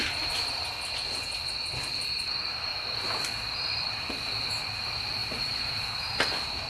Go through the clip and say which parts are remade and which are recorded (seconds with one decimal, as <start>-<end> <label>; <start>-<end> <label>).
0.0-6.7 recorded